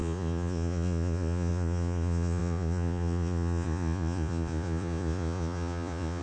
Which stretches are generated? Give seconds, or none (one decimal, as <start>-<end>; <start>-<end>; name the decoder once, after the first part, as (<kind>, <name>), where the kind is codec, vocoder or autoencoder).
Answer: 0.0-6.2 (vocoder, Vocos)